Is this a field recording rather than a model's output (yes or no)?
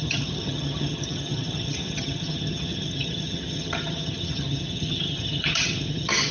no